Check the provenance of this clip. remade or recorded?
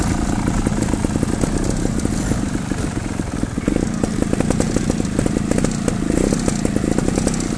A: recorded